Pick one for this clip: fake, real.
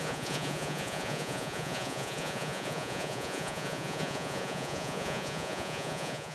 fake